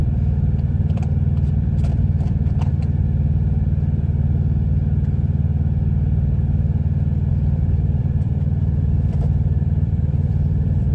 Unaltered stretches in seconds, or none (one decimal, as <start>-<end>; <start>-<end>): 2.7-7.3